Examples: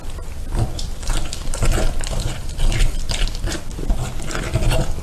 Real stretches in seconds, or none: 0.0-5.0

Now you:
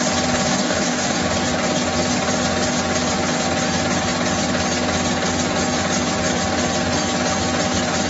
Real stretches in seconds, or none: 0.0-0.5; 1.2-8.1

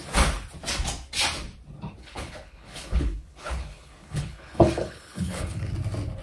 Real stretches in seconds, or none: 0.0-2.0; 5.7-6.2

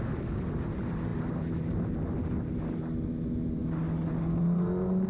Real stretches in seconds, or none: 0.0-5.1

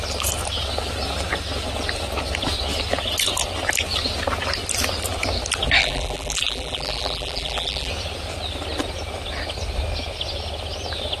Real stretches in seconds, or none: 0.0-5.8; 7.9-11.2

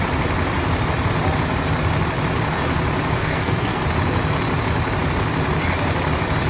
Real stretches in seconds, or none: 0.0-3.2; 3.8-6.5